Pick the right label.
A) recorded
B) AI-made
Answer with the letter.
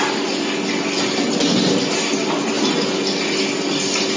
A